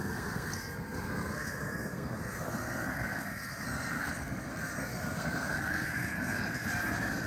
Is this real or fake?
fake